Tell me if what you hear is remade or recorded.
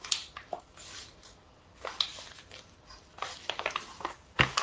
recorded